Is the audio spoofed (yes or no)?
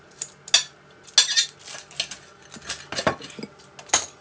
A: no